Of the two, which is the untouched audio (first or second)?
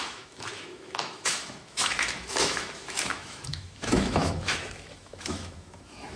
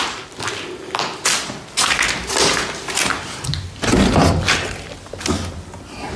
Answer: second